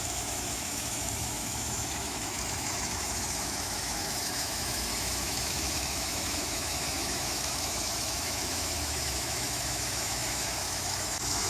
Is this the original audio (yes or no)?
no